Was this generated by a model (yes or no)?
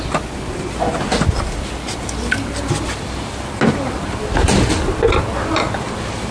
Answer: no